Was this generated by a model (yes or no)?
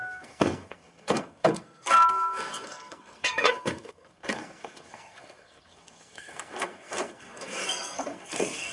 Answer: yes